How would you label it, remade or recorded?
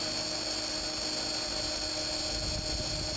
recorded